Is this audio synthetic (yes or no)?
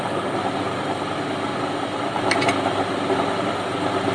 no